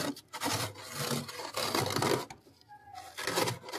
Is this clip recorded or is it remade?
recorded